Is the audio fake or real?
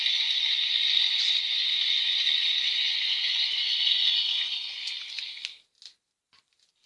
real